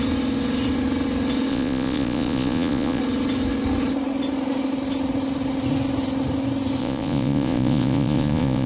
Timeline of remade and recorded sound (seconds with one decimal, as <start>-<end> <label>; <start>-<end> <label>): 0.0-1.5 recorded; 1.5-3.0 remade; 3.0-6.8 recorded; 6.8-8.7 remade